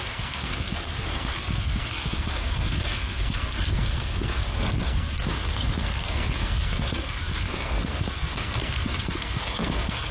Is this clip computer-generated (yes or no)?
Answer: yes